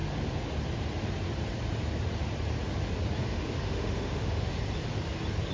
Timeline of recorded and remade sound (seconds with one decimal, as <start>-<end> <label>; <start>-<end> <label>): 0.0-3.3 recorded; 3.3-4.6 remade; 4.6-5.5 recorded